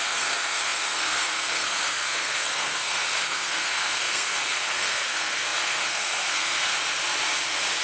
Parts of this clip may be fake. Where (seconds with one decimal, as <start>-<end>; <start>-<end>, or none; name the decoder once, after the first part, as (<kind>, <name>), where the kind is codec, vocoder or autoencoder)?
0.0-6.7 (codec, SNAC)